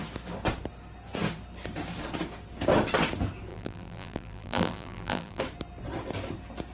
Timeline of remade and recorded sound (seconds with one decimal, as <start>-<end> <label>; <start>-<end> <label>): 0.0-3.5 recorded; 3.5-5.4 remade; 5.4-6.7 recorded